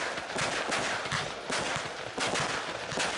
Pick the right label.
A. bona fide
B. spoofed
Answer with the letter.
A